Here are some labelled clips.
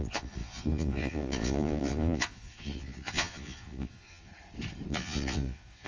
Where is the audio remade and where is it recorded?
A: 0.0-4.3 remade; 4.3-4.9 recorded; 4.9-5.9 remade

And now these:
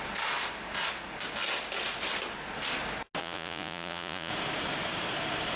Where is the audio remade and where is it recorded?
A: 0.0-3.2 recorded; 3.2-4.3 remade; 4.3-5.6 recorded

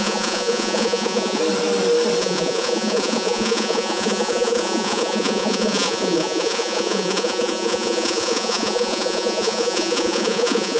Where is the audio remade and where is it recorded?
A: 0.0-1.4 remade; 1.4-2.2 recorded; 2.2-10.8 remade

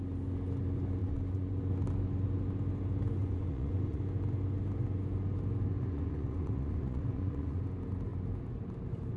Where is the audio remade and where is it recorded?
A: 0.0-1.0 recorded; 1.0-1.6 remade; 1.6-3.2 recorded; 3.2-4.0 remade; 4.0-5.8 recorded; 5.8-7.6 remade; 7.6-9.2 recorded